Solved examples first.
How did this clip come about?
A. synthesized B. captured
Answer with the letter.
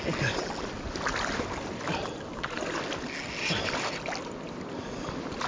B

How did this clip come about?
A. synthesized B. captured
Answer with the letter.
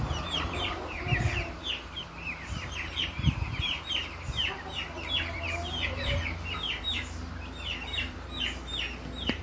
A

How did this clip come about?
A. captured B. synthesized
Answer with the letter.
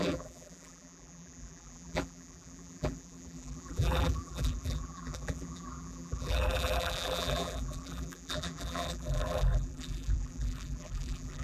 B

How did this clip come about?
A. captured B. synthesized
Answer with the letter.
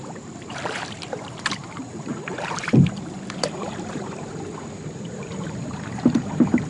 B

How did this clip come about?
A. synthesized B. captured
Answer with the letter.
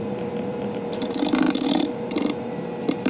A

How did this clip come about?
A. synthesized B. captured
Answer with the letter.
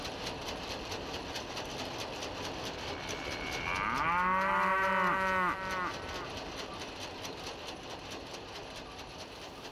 B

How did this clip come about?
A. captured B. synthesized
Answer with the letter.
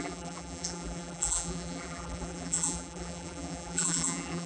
B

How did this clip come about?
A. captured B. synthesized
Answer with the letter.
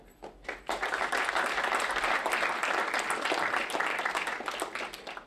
A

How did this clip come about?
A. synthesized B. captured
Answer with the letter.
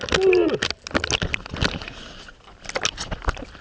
B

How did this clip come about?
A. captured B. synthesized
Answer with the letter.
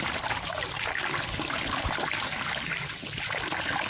B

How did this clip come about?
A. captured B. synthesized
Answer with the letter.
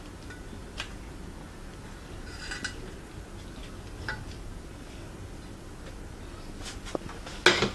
A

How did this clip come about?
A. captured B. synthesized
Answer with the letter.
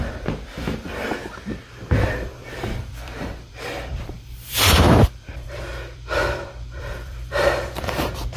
B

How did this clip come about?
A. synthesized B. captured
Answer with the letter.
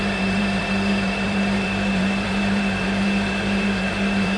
A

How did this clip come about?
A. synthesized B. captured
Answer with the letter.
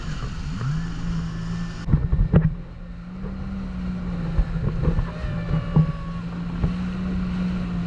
B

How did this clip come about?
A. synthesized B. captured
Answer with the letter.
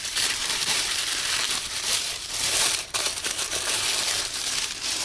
A